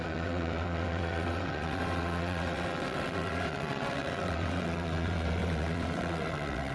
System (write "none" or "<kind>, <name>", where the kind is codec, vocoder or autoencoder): vocoder, WaveNeXt